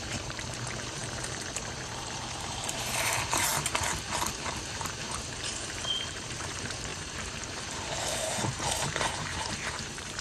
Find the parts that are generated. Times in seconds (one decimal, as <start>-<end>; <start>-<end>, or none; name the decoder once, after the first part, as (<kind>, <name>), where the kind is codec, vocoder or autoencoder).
0.0-3.5 (vocoder, BigVGAN v2); 4.8-10.2